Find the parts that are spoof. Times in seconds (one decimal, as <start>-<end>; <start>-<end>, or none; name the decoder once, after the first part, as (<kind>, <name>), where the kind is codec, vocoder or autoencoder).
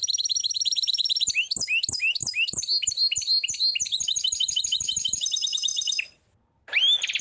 none